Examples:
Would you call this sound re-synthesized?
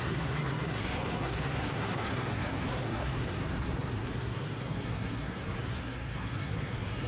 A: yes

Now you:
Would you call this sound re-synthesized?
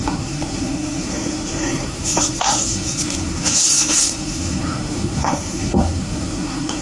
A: yes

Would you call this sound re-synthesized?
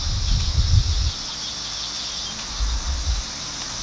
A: no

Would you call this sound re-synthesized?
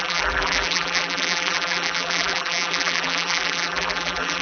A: yes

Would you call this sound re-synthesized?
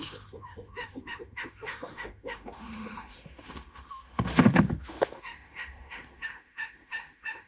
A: yes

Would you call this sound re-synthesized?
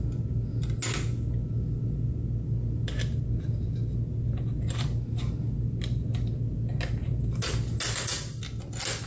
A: no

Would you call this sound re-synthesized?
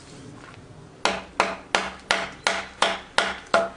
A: no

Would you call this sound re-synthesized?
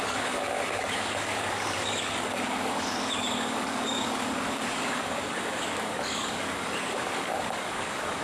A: yes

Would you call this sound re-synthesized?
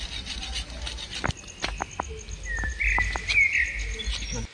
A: no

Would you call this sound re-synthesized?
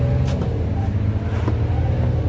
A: no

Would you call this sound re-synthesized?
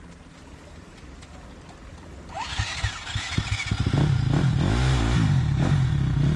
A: no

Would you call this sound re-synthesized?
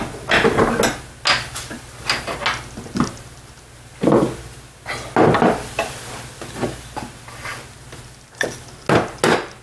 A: no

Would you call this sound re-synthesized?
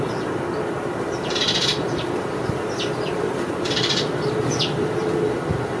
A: yes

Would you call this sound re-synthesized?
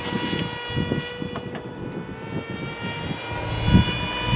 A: no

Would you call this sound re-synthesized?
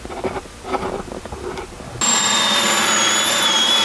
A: no